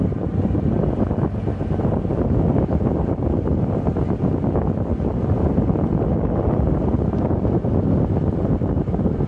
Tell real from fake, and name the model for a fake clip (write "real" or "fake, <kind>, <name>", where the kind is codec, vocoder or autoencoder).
real